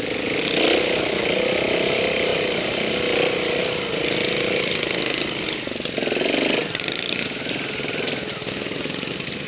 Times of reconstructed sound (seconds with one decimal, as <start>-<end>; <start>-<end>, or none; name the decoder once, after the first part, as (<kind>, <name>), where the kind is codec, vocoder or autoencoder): none